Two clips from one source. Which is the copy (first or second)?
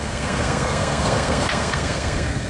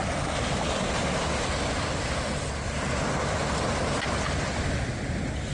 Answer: first